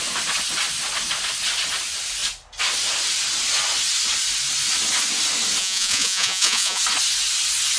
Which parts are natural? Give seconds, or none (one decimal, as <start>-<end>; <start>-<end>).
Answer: 0.0-5.6; 6.8-7.8